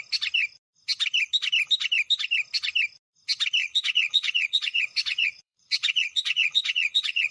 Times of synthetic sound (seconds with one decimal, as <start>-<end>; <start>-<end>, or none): 3.6-7.3